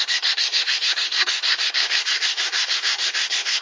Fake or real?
fake